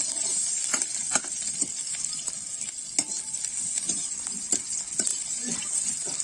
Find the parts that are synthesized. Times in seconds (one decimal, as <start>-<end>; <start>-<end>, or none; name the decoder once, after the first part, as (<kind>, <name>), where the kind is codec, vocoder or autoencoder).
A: 5.1-5.7 (vocoder, BigVGAN v2)